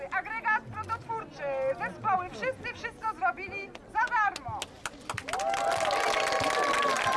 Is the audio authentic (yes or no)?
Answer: yes